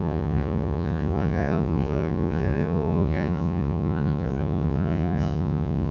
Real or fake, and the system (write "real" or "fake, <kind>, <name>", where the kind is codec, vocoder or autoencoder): fake, vocoder, Vocos